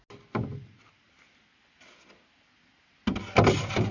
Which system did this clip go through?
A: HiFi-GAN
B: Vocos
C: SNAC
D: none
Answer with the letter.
D